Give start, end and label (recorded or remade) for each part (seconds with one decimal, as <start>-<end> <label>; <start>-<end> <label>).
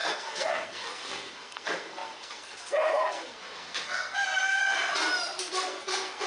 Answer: 0.0-4.6 remade; 4.6-5.5 recorded; 5.5-6.3 remade